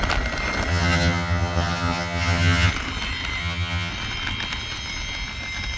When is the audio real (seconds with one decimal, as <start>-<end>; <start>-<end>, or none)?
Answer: 0.0-0.7; 2.7-3.4; 3.9-5.8